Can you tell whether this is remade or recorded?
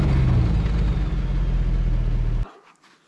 recorded